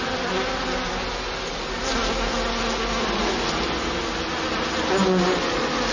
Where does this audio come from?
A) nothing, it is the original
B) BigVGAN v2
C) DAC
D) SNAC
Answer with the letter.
A